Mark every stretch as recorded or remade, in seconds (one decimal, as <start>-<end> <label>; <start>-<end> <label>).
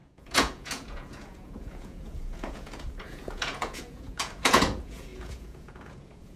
0.0-6.4 remade